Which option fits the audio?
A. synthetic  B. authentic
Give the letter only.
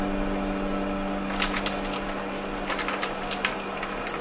B